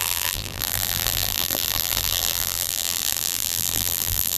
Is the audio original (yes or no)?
no